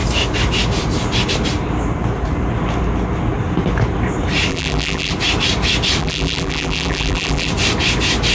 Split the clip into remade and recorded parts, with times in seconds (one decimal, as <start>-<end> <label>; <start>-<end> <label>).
0.0-4.5 recorded; 4.5-5.1 remade; 5.1-6.0 recorded; 6.0-7.5 remade; 7.5-8.3 recorded

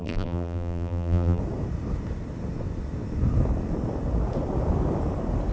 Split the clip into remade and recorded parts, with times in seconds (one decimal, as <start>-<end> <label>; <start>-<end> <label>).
0.0-1.4 remade; 1.4-5.5 recorded

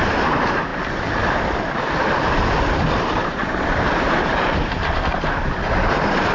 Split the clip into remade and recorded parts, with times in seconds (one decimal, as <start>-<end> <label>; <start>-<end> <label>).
0.0-6.3 remade

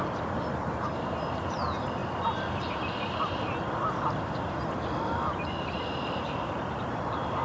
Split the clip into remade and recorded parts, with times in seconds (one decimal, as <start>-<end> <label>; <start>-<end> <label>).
0.0-2.0 remade; 2.0-6.4 recorded; 6.4-7.4 remade

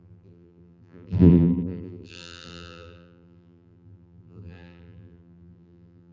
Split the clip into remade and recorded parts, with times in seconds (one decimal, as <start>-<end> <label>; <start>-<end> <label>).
0.0-6.1 remade

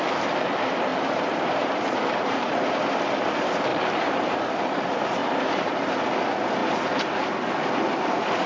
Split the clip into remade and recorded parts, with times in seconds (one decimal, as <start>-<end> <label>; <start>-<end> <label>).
0.0-0.9 recorded; 0.9-2.8 remade; 2.8-3.7 recorded; 3.7-4.5 remade; 4.5-5.2 recorded; 5.2-5.9 remade; 5.9-6.6 recorded; 6.6-7.1 remade; 7.1-8.5 recorded

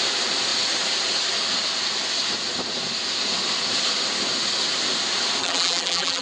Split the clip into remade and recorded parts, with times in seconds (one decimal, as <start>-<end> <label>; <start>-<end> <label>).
0.0-5.4 recorded; 5.4-6.2 remade